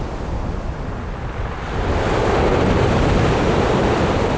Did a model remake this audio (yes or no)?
no